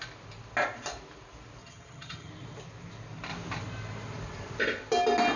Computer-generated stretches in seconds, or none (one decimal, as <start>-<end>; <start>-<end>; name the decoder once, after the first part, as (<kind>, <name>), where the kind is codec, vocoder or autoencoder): 1.6-2.3 (vocoder, HiFi-GAN)